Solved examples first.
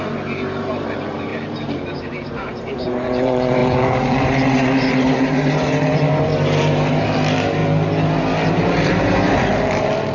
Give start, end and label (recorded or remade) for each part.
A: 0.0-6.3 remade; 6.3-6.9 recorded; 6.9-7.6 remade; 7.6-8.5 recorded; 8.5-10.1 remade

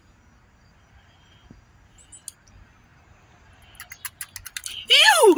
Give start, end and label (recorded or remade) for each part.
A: 0.0-5.4 recorded

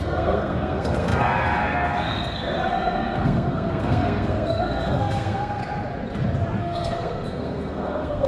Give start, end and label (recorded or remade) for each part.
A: 0.0-5.6 remade; 5.6-6.6 recorded; 6.6-8.3 remade

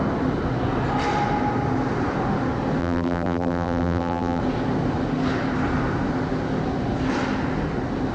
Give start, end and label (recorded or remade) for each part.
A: 0.0-2.8 recorded; 2.8-4.4 remade; 4.4-8.1 recorded

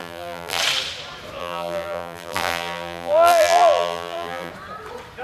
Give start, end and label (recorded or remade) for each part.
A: 0.0-0.6 remade; 0.6-1.4 recorded; 1.4-4.5 remade; 4.5-5.2 recorded